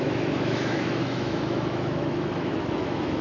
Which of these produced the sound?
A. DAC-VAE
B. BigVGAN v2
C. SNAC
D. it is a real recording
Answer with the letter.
A